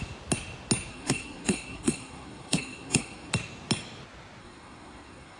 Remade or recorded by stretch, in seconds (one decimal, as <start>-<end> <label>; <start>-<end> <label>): 0.0-0.9 recorded; 0.9-3.3 remade; 3.3-4.4 recorded; 4.4-5.4 remade